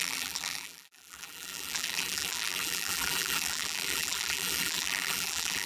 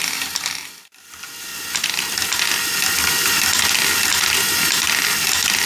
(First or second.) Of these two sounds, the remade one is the first